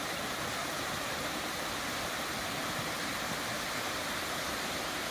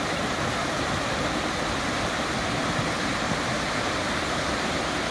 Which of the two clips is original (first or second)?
second